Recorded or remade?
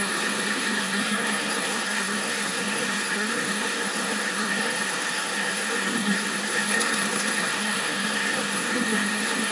remade